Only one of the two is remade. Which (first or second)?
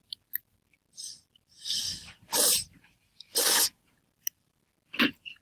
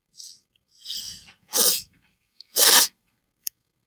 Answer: second